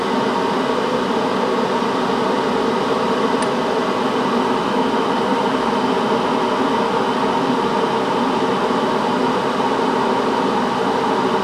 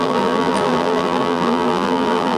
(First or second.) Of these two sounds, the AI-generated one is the second